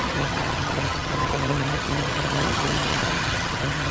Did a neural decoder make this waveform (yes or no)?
yes